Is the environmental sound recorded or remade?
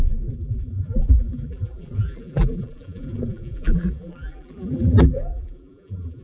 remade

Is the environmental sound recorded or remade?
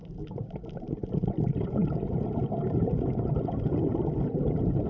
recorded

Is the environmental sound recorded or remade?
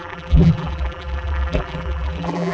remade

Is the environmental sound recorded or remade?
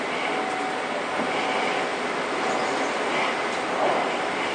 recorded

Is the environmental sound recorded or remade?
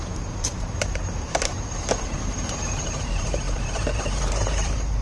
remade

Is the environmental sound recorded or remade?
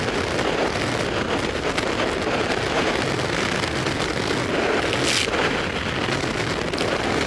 recorded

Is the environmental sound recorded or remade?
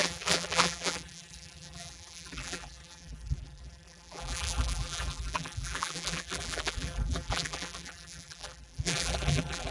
remade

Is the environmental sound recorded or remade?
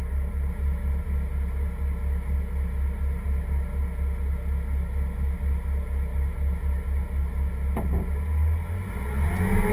recorded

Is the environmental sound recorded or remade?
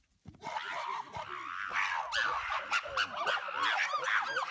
recorded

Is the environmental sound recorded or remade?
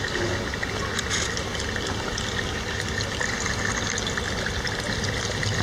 recorded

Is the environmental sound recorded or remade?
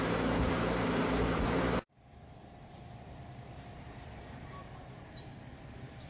remade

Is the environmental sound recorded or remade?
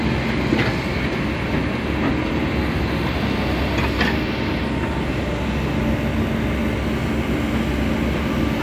recorded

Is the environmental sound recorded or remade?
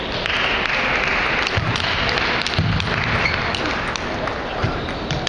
recorded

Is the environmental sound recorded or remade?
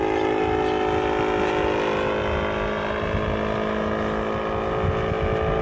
recorded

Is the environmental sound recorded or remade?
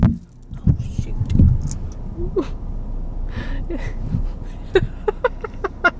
recorded